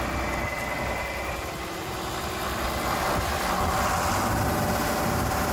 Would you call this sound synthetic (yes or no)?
no